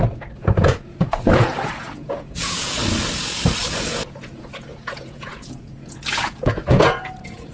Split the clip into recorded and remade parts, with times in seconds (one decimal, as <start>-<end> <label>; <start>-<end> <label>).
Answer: 0.0-2.8 remade; 2.8-3.7 recorded; 3.7-7.5 remade